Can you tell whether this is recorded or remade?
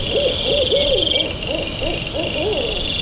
recorded